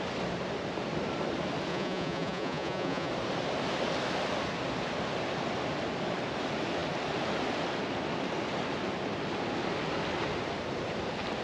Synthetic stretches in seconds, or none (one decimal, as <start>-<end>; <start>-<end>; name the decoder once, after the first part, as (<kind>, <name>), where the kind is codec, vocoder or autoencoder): 1.7-3.1 (vocoder, Vocos)